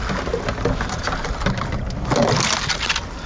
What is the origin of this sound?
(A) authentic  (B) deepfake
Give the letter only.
A